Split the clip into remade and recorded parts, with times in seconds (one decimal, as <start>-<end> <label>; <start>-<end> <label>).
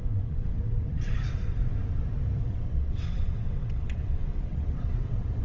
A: 0.0-1.7 remade; 1.7-2.4 recorded; 2.4-5.4 remade